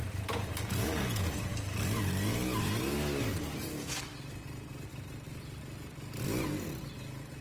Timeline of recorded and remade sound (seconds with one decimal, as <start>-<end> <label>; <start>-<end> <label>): 0.0-1.0 remade; 1.0-4.9 recorded; 4.9-5.6 remade; 5.6-7.4 recorded